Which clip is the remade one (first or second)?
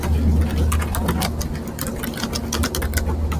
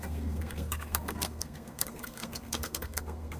second